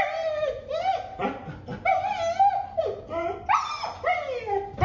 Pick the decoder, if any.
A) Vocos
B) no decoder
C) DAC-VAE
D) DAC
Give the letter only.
B